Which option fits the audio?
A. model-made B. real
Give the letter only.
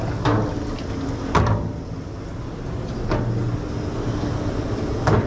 B